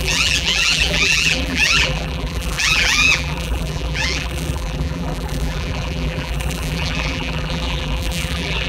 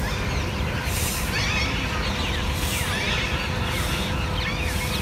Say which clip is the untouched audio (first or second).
second